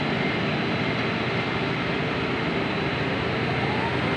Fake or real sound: real